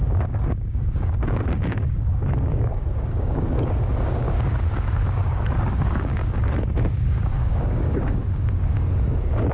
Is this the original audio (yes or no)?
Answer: no